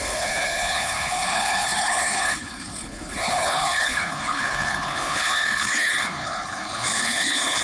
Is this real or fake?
fake